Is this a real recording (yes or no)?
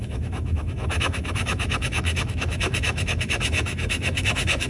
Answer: no